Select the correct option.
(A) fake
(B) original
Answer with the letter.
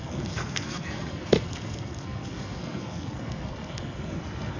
A